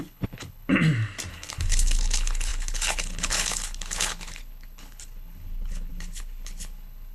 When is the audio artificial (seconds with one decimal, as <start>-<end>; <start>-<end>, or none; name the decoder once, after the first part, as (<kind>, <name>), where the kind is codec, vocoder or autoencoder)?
0.0-0.7 (codec, HILCodec); 1.3-7.1